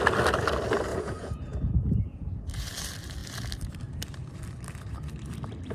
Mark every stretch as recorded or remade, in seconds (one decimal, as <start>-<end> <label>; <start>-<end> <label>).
0.0-0.9 recorded; 0.9-2.3 remade; 2.3-5.7 recorded